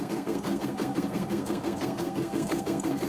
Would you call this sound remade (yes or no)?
yes